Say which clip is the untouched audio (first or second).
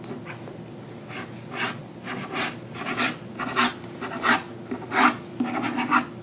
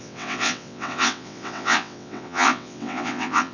first